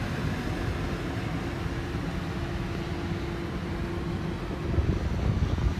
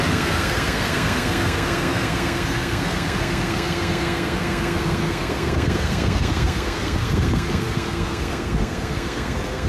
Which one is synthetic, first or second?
second